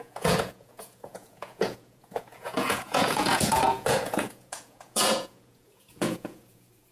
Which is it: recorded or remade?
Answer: remade